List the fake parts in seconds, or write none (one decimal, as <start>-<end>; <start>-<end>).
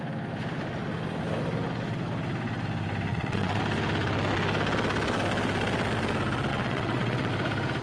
3.1-3.6; 6.5-7.3